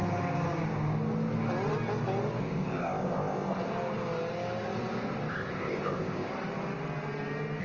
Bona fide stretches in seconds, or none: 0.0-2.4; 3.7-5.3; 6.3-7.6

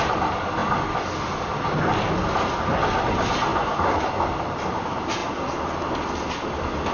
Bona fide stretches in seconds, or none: 0.0-6.9